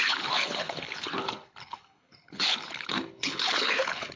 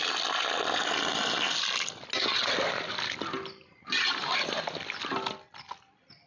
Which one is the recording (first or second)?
second